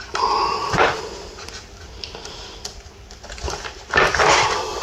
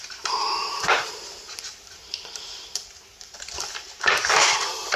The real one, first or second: first